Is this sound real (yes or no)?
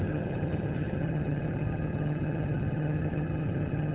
no